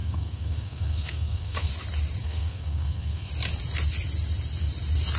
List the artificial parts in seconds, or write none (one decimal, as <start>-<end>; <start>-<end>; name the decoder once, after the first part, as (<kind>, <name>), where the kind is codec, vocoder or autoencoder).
0.0-1.7 (codec, SNAC); 2.2-3.3

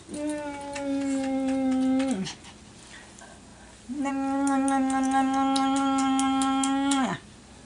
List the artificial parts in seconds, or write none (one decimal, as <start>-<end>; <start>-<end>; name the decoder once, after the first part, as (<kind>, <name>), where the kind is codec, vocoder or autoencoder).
none

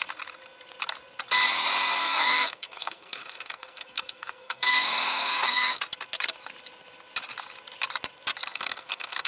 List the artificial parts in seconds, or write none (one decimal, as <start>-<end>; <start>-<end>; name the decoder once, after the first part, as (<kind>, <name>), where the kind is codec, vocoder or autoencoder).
2.0-5.8 (codec, SNAC); 8.5-9.3